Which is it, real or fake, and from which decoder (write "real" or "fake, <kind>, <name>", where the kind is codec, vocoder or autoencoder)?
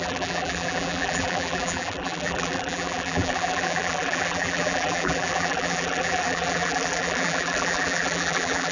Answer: fake, vocoder, BigVGAN v2